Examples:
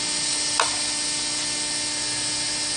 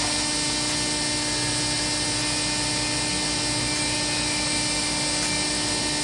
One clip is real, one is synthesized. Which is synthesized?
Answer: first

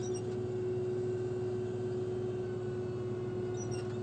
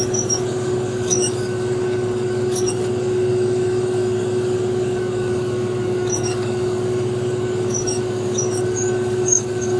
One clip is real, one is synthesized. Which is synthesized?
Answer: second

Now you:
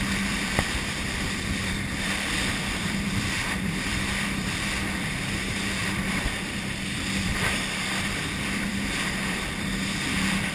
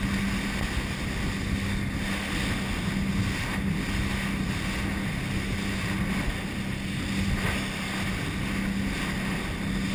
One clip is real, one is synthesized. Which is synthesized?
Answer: first